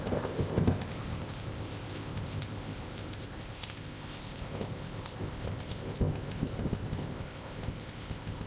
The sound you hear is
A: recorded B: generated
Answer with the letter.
B